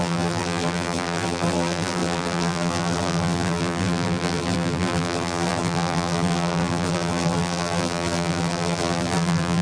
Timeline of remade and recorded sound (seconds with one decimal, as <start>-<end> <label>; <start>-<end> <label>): 0.0-9.6 remade